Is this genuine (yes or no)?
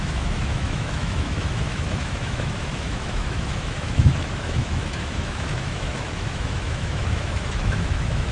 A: no